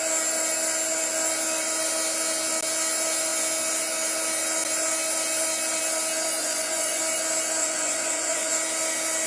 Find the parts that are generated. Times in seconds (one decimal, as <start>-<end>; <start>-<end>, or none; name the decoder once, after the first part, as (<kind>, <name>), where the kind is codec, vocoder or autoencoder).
6.4-7.0 (vocoder, Vocos); 7.6-8.5